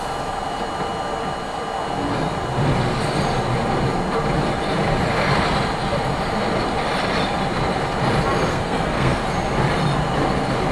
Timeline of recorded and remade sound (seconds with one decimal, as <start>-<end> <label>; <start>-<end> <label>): 0.0-8.5 recorded; 8.5-9.2 remade; 9.2-10.7 recorded